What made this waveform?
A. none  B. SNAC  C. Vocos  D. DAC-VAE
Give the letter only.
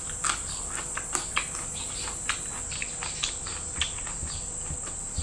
A